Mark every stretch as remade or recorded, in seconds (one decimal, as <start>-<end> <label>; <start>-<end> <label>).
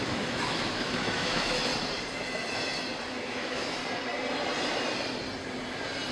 0.0-1.7 remade; 1.7-3.1 recorded; 3.1-3.8 remade; 3.8-6.1 recorded